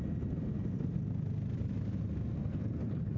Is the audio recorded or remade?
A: recorded